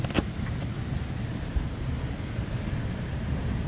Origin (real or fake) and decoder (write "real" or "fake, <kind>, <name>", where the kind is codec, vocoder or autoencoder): fake, vocoder, BigVGAN v2